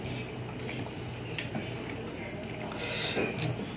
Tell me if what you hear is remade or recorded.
recorded